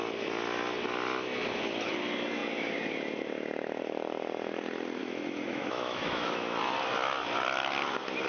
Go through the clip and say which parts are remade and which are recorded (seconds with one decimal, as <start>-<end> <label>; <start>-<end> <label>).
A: 0.0-5.0 recorded; 5.0-6.6 remade; 6.6-8.3 recorded